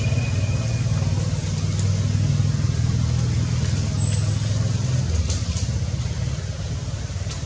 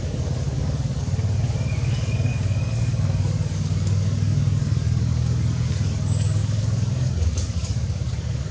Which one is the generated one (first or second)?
second